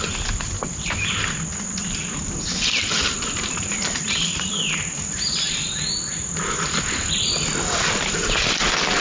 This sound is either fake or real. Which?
real